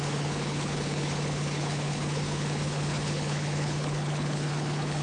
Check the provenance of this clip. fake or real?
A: fake